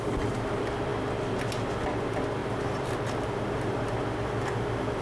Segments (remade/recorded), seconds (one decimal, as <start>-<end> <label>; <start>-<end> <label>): 0.0-2.4 recorded; 2.4-3.9 remade; 3.9-5.0 recorded